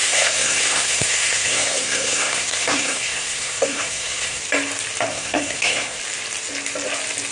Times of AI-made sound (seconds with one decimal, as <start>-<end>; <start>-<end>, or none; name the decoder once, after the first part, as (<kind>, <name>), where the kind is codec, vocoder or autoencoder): 0.0-4.4 (codec, SNAC); 5.1-6.0